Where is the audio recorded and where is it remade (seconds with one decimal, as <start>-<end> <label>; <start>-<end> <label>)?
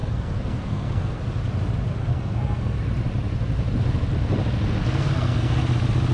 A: 0.0-1.2 remade; 1.2-2.0 recorded; 2.0-2.8 remade; 2.8-4.8 recorded; 4.8-5.6 remade; 5.6-6.1 recorded